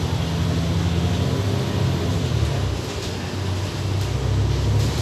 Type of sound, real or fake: real